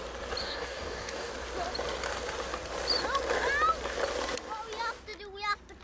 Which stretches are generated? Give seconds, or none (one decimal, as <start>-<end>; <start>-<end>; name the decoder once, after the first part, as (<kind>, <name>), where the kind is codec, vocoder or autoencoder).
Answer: 0.4-1.3 (codec, DAC)